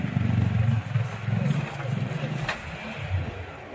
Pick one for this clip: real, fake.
real